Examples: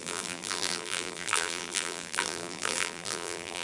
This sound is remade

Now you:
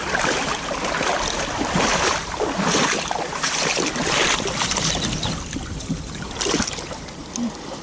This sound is remade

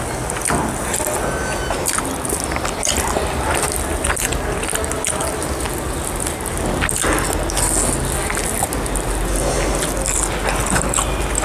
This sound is recorded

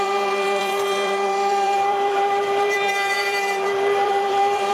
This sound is remade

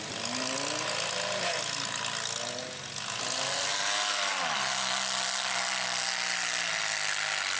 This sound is recorded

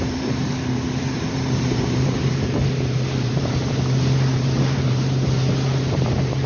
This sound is remade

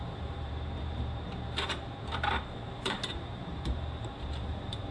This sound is remade